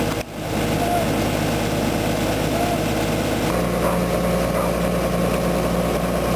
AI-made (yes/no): no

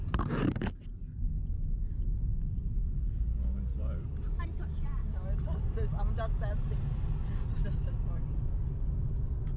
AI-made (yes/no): no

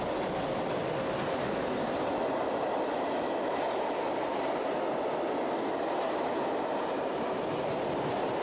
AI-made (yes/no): no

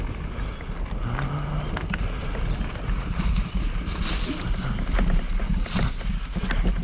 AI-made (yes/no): no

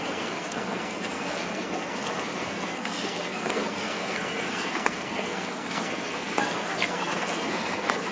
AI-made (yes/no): yes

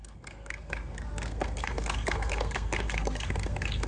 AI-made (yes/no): yes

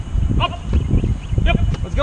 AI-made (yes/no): no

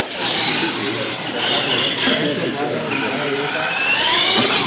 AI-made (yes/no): no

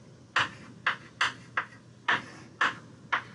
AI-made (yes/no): no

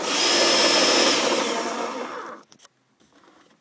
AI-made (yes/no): no